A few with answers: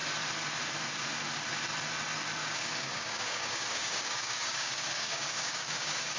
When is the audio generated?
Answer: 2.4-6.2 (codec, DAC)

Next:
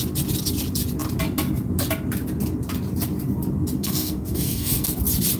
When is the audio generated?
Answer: 3.8-5.0 (codec, SNAC)

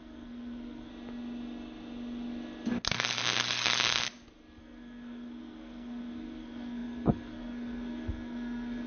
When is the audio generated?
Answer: 0.0-0.9 (codec, SNAC); 4.6-8.9

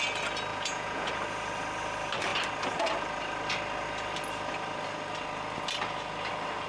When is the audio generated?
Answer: 0.5-1.1 (vocoder, Vocos)

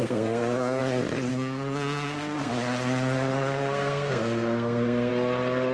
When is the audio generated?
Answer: 0.0-0.8 (codec, SNAC); 1.3-2.5; 3.3-5.1